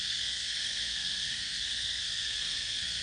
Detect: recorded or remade remade